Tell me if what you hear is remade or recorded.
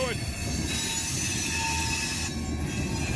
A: recorded